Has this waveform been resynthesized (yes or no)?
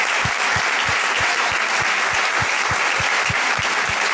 no